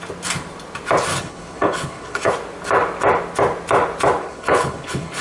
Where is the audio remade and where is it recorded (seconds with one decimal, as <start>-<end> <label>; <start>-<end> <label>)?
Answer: 0.0-1.1 recorded; 1.1-2.3 remade; 2.3-4.2 recorded; 4.2-5.2 remade